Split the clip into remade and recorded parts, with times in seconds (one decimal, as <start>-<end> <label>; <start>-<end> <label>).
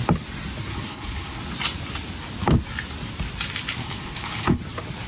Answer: 0.0-0.7 recorded; 0.7-1.4 remade; 1.4-3.8 recorded; 3.8-4.6 remade; 4.6-5.1 recorded